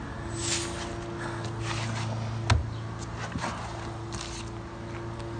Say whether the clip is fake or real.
real